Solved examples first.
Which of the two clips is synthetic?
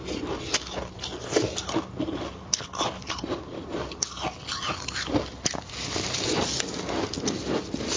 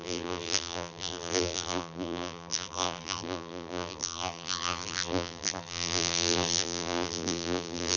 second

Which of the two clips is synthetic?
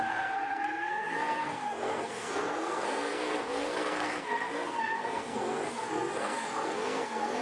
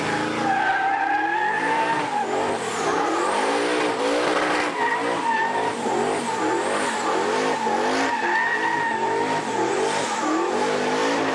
first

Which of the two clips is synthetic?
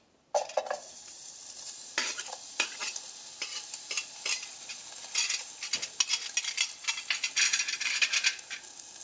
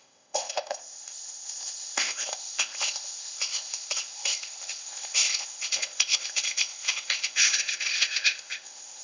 second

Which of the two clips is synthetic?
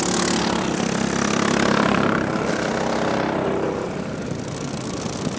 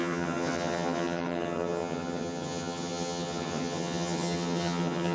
second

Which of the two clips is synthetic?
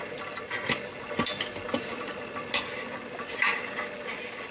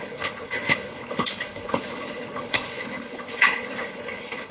second